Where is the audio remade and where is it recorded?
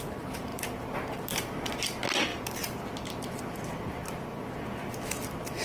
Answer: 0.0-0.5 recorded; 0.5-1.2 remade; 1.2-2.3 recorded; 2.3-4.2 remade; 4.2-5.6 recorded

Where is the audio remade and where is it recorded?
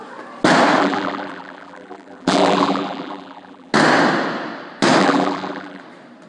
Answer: 0.0-0.8 recorded; 0.8-3.7 remade; 3.7-5.0 recorded; 5.0-5.8 remade; 5.8-6.3 recorded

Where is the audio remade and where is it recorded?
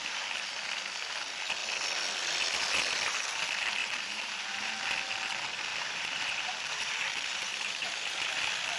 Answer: 0.0-3.8 recorded; 3.8-4.7 remade; 4.7-5.7 recorded; 5.7-8.4 remade; 8.4-8.8 recorded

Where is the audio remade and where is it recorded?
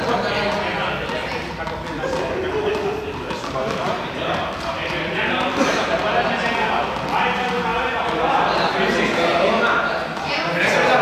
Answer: 0.0-3.6 recorded; 3.6-6.3 remade; 6.3-7.7 recorded; 7.7-8.9 remade; 8.9-11.0 recorded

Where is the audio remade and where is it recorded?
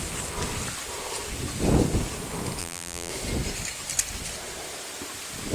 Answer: 0.0-2.6 recorded; 2.6-3.1 remade; 3.1-5.5 recorded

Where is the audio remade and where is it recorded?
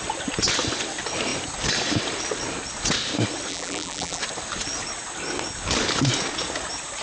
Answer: 0.0-3.5 recorded; 3.5-4.2 remade; 4.2-7.0 recorded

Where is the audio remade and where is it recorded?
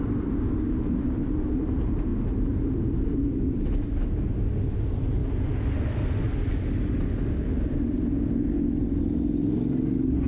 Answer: 0.0-5.2 remade; 5.2-10.3 recorded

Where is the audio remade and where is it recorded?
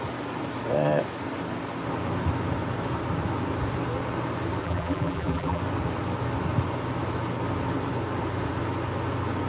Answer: 0.0-4.6 recorded; 4.6-5.6 remade; 5.6-9.5 recorded